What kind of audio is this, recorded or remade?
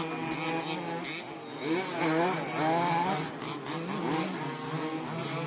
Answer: recorded